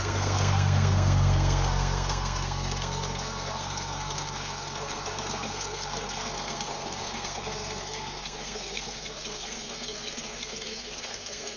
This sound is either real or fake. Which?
fake